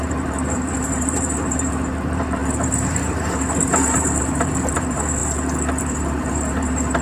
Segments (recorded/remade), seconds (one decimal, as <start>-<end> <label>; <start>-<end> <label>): 0.0-5.2 remade; 5.2-5.8 recorded; 5.8-7.0 remade

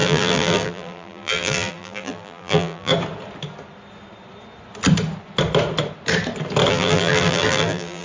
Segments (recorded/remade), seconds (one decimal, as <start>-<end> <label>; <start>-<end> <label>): 0.0-2.9 remade; 2.9-6.7 recorded; 6.7-8.0 remade